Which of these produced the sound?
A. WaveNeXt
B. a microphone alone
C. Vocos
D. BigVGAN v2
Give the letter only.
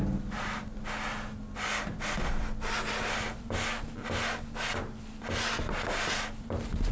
B